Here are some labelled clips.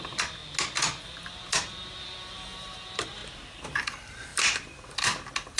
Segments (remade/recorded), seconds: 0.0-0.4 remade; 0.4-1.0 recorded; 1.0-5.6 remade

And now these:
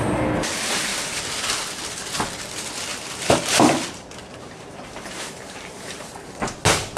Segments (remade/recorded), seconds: 0.0-2.9 recorded; 2.9-6.4 remade; 6.4-7.0 recorded

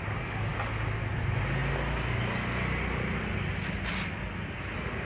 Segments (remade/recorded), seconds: 0.0-5.1 recorded

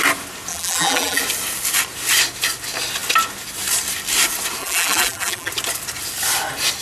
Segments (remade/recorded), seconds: 0.0-0.5 recorded; 0.5-1.2 remade; 1.2-4.6 recorded; 4.6-5.5 remade; 5.5-6.8 recorded

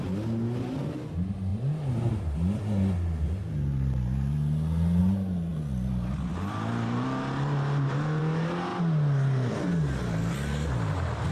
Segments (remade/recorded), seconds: 0.0-11.3 recorded

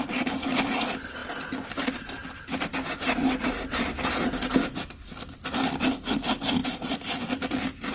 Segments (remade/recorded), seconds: 0.0-6.6 recorded; 6.6-7.2 remade; 7.2-7.9 recorded